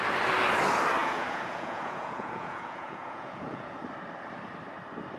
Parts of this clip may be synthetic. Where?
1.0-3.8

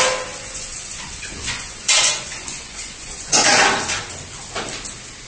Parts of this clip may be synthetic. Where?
0.4-3.6